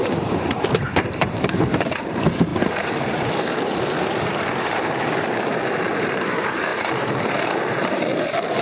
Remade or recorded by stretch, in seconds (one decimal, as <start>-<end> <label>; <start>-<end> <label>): 0.0-8.6 remade